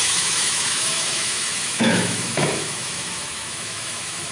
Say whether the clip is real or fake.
fake